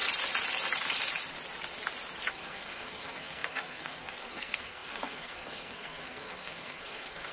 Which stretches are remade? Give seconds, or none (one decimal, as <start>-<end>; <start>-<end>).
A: 2.3-7.3